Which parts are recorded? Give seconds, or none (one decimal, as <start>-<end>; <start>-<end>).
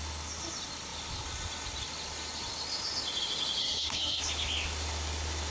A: 0.0-3.6; 4.2-5.5